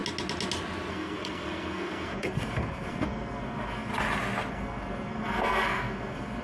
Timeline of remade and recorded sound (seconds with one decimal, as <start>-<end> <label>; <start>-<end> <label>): 0.0-0.9 recorded; 0.9-3.9 remade; 3.9-4.5 recorded; 4.5-6.4 remade

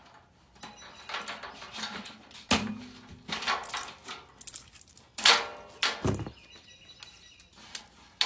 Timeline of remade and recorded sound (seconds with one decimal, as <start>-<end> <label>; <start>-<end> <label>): 0.0-8.3 recorded

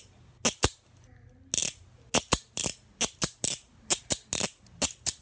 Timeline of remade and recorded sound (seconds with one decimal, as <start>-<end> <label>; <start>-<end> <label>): 0.0-5.2 recorded

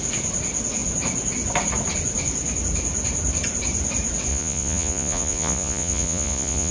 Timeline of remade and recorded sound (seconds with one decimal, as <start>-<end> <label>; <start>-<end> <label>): 0.0-4.3 recorded; 4.3-6.7 remade